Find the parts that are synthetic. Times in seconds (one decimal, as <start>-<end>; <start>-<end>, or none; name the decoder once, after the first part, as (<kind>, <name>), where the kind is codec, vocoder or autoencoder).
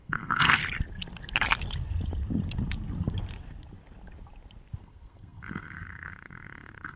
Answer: 0.0-0.6 (codec, SNAC); 4.8-7.0